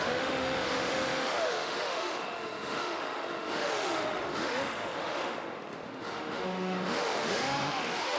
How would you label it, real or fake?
fake